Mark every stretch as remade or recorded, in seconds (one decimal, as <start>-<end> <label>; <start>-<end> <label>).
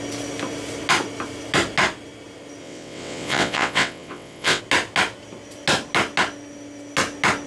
0.0-2.6 recorded; 2.6-4.6 remade; 4.6-7.5 recorded